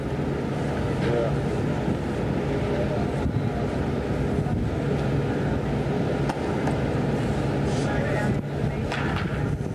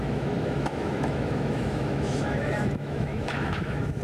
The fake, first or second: second